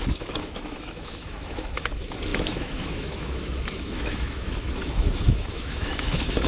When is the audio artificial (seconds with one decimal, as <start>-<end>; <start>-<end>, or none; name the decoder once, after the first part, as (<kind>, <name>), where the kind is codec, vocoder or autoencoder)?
0.0-6.5 (autoencoder, DAC-VAE)

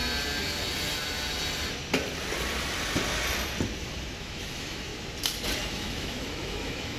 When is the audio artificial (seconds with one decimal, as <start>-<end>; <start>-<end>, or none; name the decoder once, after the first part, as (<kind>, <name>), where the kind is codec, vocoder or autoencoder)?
4.2-4.9 (autoencoder, DAC-VAE); 5.7-7.0

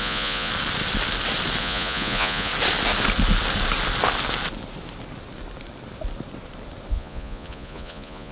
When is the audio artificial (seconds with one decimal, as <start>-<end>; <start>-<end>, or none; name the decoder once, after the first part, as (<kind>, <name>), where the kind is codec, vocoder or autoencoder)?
0.0-0.5 (vocoder, Vocos); 1.6-2.5; 6.9-8.3